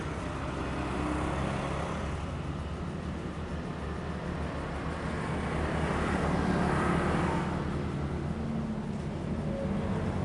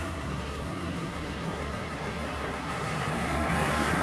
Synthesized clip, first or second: second